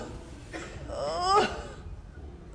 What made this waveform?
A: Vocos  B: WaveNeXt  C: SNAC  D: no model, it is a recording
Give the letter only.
D